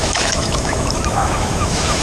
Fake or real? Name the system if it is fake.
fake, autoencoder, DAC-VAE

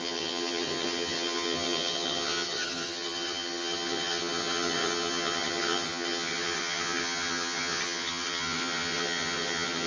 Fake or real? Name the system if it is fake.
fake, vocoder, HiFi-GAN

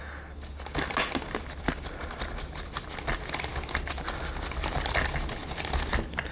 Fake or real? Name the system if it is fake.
real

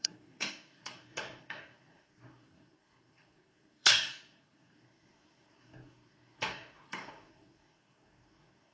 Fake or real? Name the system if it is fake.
fake, codec, SNAC